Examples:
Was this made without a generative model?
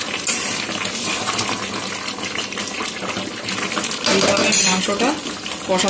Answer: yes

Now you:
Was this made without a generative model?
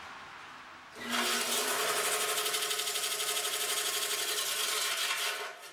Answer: yes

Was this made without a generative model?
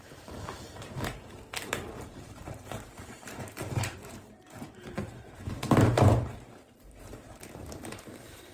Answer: no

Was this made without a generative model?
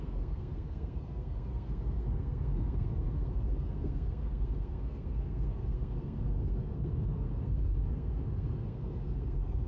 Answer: no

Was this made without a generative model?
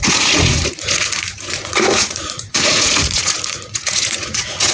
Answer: no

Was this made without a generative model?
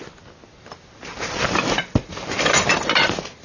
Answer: yes